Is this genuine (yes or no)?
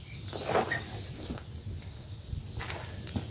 yes